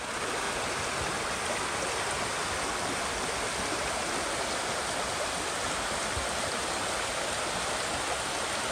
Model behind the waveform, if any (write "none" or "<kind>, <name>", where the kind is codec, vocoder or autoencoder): none